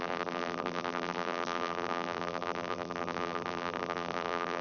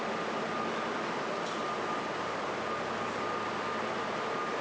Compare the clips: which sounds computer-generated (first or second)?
first